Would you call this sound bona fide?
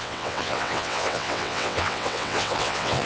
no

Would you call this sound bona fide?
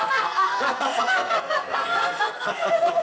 no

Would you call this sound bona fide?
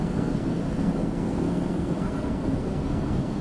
no